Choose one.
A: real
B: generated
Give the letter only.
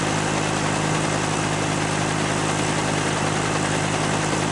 A